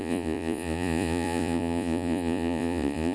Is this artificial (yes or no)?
yes